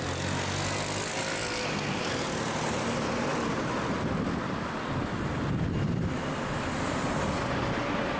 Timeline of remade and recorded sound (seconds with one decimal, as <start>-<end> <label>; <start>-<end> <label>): 0.0-8.2 recorded